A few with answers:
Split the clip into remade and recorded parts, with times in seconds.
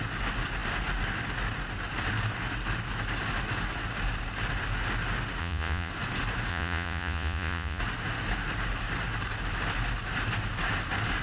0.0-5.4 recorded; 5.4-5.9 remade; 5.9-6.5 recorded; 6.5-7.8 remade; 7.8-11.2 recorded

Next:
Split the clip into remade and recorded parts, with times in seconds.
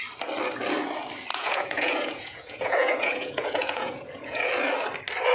0.0-1.3 recorded; 1.3-4.5 remade; 4.5-5.3 recorded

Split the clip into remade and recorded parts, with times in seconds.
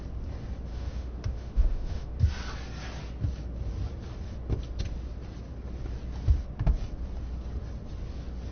0.0-0.7 recorded; 0.7-2.2 remade; 2.2-8.5 recorded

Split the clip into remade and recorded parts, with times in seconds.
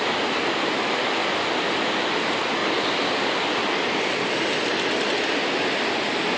0.0-6.4 recorded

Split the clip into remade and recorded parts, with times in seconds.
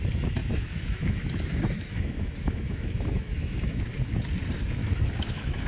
0.0-0.4 recorded; 0.4-3.8 remade; 3.8-4.8 recorded; 4.8-5.7 remade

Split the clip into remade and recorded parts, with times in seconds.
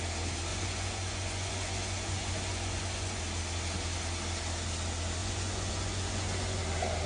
0.0-0.5 recorded; 0.5-3.2 remade; 3.2-5.2 recorded; 5.2-6.6 remade; 6.6-7.1 recorded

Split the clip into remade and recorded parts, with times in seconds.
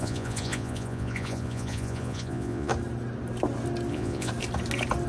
0.0-2.7 remade; 2.7-3.9 recorded; 3.9-4.3 remade; 4.3-5.1 recorded